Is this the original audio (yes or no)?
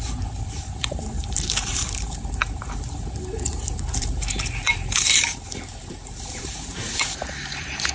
no